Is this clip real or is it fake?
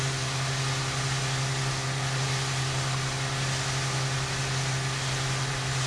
real